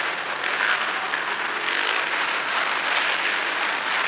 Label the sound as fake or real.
real